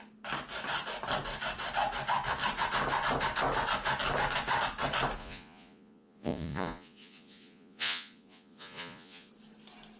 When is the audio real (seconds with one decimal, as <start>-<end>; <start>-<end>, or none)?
0.0-5.2; 9.3-10.0